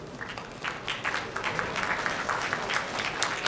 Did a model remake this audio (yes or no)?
no